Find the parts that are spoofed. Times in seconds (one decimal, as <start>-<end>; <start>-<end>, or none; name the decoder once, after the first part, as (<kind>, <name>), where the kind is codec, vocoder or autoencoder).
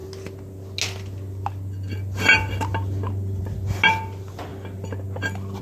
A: none